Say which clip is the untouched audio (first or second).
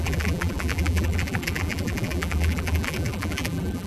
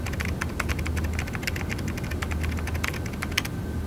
second